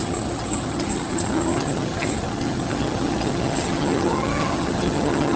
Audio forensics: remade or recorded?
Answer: remade